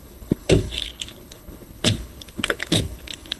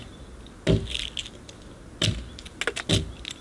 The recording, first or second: second